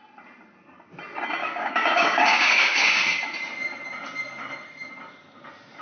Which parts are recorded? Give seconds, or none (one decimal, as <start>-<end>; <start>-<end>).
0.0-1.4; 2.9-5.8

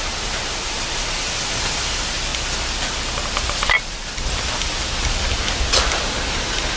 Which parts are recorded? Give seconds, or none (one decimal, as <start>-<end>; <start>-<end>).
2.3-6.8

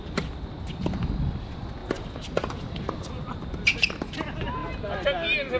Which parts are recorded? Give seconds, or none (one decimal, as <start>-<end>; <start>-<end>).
0.0-5.6